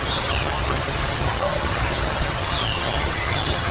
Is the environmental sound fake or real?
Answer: fake